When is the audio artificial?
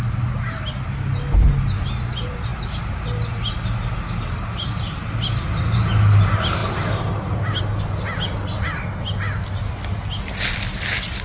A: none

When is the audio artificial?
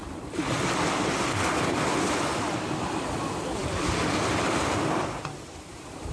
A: 3.2-6.1 (vocoder, BigVGAN v2)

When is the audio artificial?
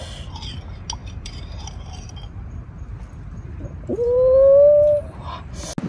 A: 1.0-2.4 (vocoder, BigVGAN v2)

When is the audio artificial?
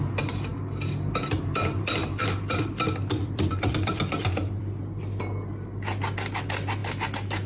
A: 2.0-5.2 (vocoder, BigVGAN v2)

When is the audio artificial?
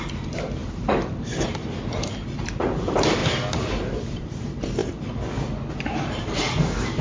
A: 0.0-3.2 (vocoder, BigVGAN v2); 3.9-4.8; 5.7-7.0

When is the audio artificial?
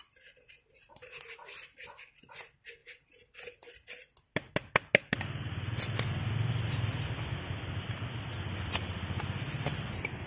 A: none